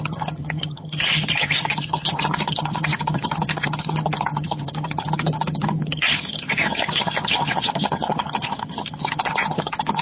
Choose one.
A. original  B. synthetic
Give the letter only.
B